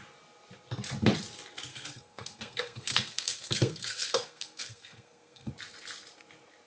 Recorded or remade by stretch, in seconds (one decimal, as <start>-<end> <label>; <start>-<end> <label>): 0.0-1.7 recorded; 1.7-5.5 remade; 5.5-6.7 recorded